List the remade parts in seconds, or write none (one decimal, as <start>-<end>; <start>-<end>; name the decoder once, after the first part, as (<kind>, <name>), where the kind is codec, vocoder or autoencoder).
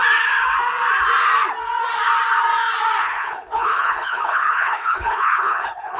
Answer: 3.0-6.0 (codec, HILCodec)